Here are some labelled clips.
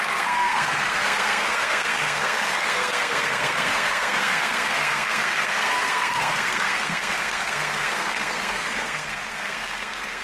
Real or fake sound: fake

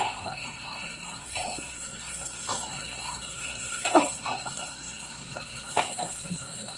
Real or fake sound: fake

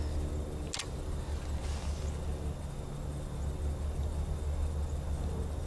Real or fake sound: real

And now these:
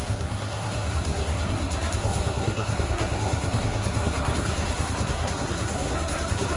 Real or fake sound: fake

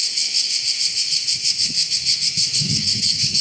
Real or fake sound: fake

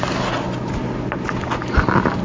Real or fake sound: real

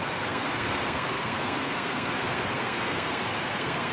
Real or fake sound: fake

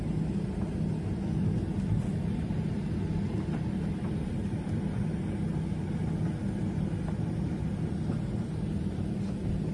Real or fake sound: real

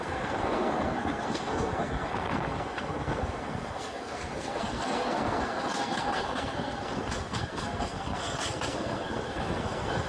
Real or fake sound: fake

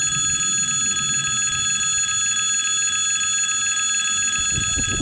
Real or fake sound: real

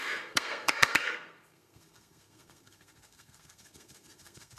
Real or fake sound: fake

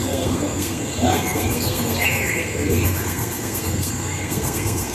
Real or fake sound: fake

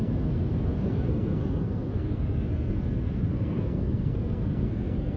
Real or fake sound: fake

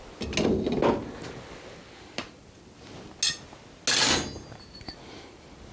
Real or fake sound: real